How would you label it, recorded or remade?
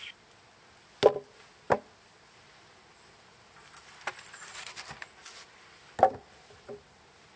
recorded